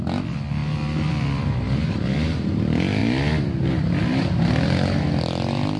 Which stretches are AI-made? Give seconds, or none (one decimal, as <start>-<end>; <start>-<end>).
none